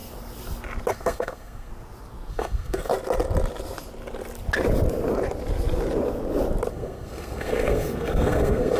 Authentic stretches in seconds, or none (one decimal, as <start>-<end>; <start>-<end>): 0.0-0.9; 1.7-2.3; 2.9-6.7